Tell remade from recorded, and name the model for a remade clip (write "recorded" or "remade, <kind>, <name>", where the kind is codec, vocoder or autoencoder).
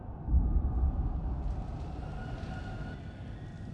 recorded